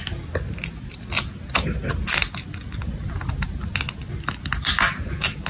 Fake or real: real